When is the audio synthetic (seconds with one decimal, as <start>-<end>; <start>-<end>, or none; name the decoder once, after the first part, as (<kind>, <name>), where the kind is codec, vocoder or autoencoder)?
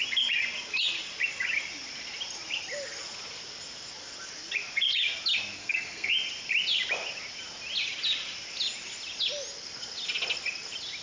5.6-6.1 (codec, SNAC)